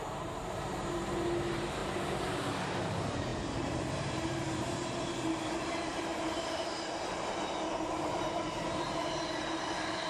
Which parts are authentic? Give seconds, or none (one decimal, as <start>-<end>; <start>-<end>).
1.8-2.5

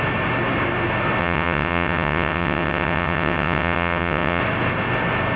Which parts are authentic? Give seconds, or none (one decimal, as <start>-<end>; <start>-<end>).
0.0-1.2; 4.4-5.4

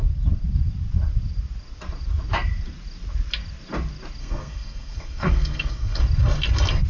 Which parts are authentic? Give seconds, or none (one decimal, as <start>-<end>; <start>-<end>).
0.0-4.2; 6.0-6.9

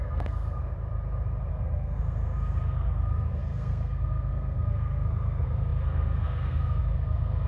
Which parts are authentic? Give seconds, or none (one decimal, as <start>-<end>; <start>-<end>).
0.6-1.5